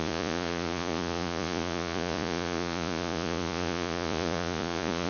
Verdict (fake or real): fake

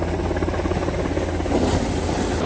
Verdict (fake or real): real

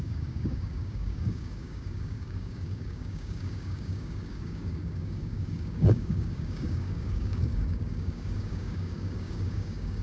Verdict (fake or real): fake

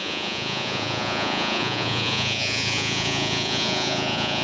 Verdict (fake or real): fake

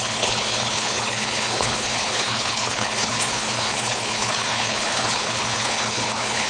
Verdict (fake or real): fake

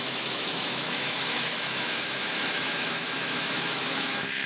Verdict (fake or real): fake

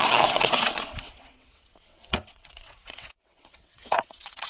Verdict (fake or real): fake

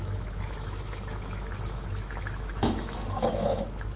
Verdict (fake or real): fake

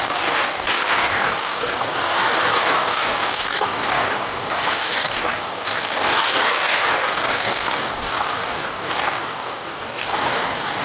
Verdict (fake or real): fake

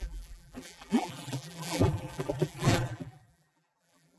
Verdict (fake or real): fake